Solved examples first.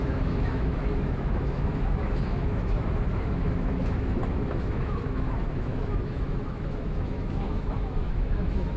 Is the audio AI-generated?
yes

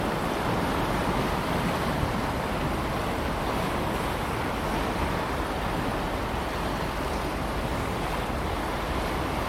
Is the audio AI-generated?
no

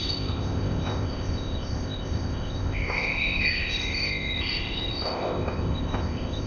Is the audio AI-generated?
yes